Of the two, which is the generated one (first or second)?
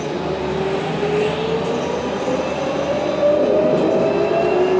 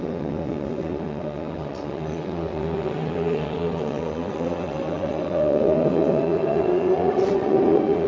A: second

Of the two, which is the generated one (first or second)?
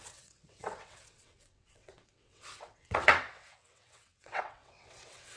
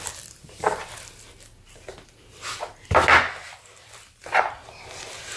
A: first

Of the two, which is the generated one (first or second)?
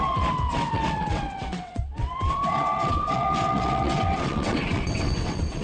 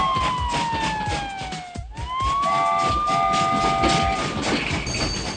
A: first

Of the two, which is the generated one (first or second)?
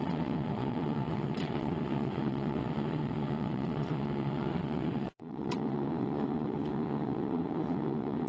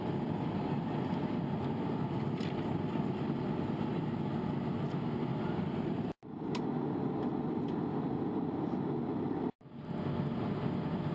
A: first